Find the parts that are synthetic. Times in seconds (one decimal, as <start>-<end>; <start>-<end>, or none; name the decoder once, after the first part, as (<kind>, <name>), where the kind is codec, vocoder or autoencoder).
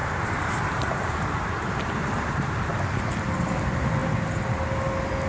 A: 0.0-2.6 (vocoder, BigVGAN v2)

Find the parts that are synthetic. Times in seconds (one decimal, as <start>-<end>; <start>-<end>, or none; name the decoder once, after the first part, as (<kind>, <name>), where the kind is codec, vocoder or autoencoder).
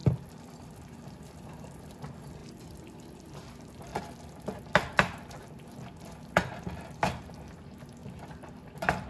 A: 0.0-1.9 (vocoder, BigVGAN v2); 2.4-3.5; 3.9-4.6; 8.0-9.1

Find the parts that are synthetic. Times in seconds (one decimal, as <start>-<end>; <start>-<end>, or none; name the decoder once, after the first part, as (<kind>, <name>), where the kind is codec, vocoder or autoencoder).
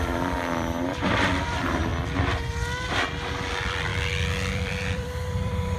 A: 0.0-1.9 (vocoder, BigVGAN v2); 3.5-3.9; 4.5-5.8